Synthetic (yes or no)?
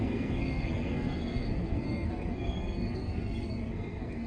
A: yes